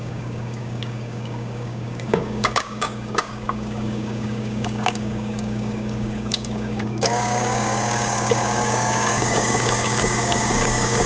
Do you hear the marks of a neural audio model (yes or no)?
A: yes